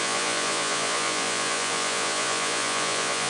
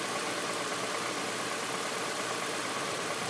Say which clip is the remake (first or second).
first